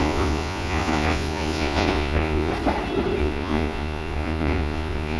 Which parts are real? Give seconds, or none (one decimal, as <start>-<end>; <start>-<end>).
2.5-3.2

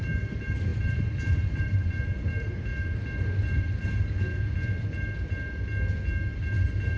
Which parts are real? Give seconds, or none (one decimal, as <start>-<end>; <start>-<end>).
2.7-7.0

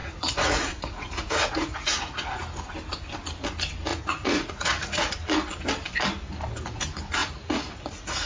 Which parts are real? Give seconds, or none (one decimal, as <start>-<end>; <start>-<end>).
2.4-3.9; 5.1-7.2

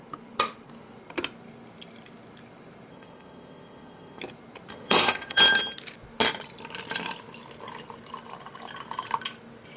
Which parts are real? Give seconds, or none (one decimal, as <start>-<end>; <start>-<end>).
0.0-2.9; 4.2-4.7; 5.4-9.8

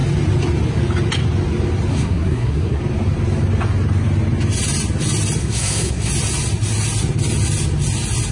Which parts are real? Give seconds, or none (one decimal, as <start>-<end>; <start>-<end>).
0.0-1.9; 2.8-5.4; 6.1-8.3